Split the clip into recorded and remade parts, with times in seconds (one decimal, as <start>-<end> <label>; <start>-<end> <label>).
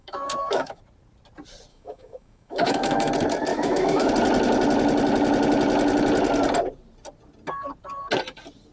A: 0.0-0.8 remade; 0.8-1.7 recorded; 1.7-3.1 remade; 3.1-3.5 recorded; 3.5-4.1 remade; 4.1-8.7 recorded